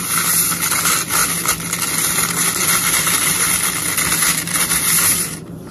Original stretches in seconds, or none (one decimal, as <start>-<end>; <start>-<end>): 0.0-5.7